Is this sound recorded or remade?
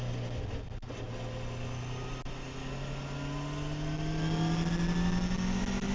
recorded